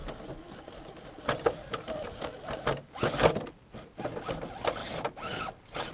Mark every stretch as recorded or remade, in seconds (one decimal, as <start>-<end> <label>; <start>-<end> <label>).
0.0-5.9 recorded